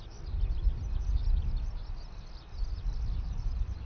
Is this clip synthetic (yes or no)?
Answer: no